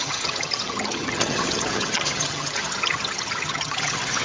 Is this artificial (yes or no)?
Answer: yes